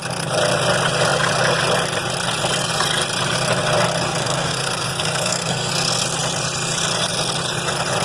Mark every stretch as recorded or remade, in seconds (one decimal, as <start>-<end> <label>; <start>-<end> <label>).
0.0-4.2 recorded; 4.2-5.7 remade; 5.7-8.0 recorded